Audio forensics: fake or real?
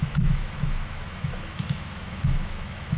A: fake